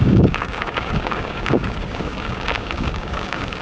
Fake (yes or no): yes